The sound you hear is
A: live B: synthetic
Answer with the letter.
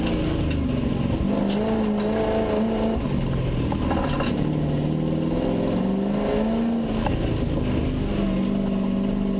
A